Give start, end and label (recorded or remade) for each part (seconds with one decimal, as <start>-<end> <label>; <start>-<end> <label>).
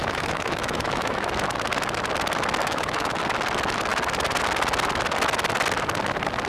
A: 0.0-1.3 remade; 1.3-2.6 recorded; 2.6-3.2 remade; 3.2-6.5 recorded